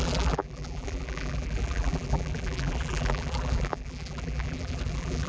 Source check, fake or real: fake